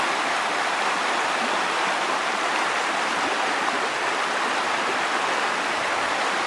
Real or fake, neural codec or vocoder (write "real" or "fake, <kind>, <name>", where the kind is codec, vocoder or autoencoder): real